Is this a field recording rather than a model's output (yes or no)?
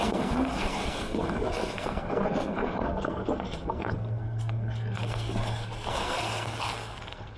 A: no